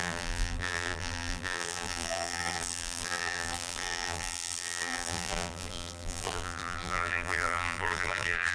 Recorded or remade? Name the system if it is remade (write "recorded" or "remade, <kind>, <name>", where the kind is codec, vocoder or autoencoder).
remade, vocoder, BigVGAN v2